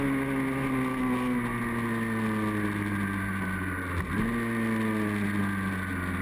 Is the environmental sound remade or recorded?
recorded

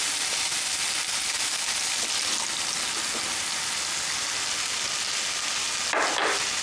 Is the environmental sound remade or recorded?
recorded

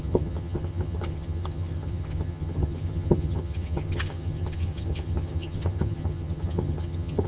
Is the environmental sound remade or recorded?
remade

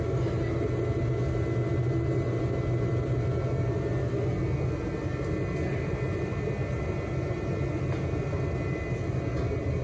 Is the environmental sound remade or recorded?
recorded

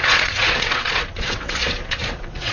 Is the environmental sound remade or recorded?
remade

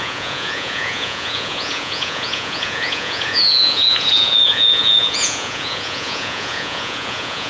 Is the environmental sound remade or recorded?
remade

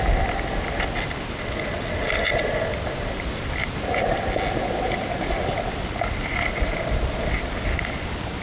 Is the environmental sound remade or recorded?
recorded